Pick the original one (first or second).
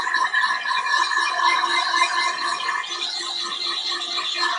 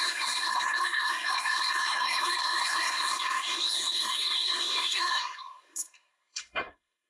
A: first